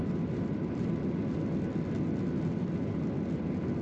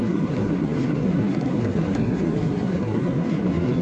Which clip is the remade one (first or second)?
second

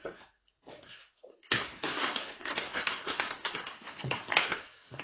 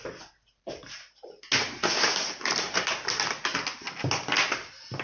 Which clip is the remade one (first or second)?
first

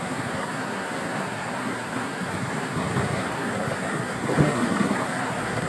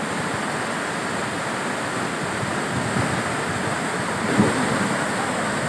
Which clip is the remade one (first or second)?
first